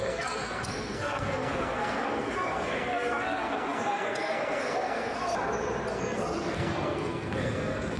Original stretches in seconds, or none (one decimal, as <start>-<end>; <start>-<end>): 5.2-5.9